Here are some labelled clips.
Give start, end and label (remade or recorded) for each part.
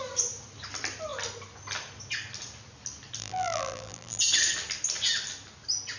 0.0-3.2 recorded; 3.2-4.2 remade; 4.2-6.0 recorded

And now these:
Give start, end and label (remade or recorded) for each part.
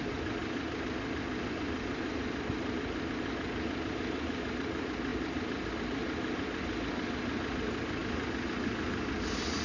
0.0-9.6 recorded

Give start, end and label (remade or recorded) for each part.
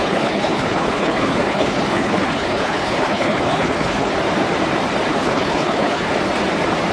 0.0-4.1 remade; 4.1-5.1 recorded; 5.1-6.1 remade; 6.1-6.9 recorded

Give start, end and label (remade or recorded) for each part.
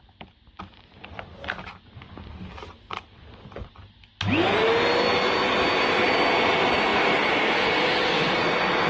0.0-8.9 recorded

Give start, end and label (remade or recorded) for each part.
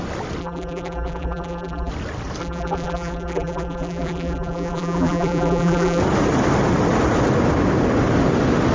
0.0-0.4 recorded; 0.4-1.9 remade; 1.9-2.4 recorded; 2.4-6.0 remade; 6.0-8.7 recorded